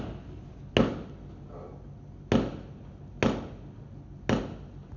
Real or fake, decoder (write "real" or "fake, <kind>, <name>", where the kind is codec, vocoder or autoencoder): real